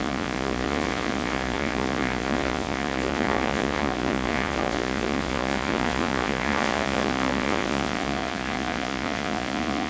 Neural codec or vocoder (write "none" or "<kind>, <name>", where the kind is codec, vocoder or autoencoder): vocoder, Vocos